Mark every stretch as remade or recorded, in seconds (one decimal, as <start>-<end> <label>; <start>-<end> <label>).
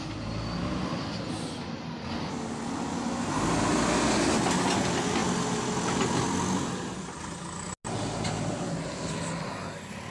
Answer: 0.0-10.1 recorded